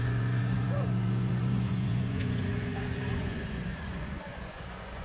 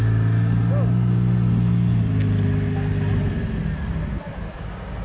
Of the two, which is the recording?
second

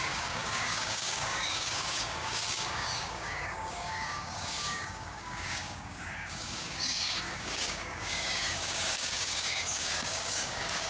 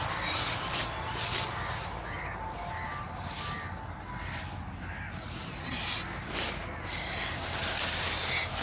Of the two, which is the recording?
second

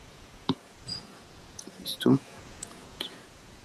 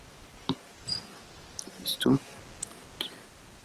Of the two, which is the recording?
second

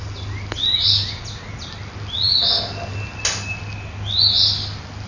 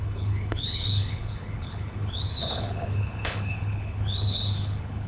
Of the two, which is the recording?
first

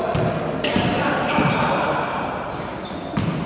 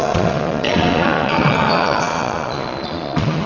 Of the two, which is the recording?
first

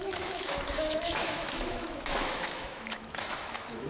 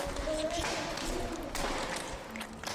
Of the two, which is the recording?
second